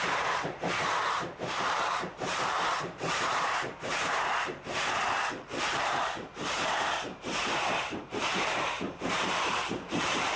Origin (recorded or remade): remade